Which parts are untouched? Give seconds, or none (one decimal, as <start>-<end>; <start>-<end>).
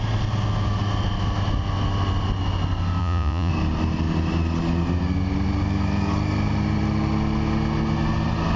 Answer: 0.0-3.0; 3.5-8.6